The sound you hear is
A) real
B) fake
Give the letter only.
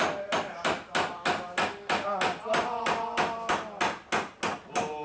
A